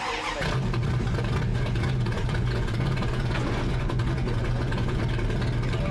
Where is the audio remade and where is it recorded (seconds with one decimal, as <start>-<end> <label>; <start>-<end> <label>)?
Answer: 0.0-1.5 recorded; 1.5-5.0 remade; 5.0-5.9 recorded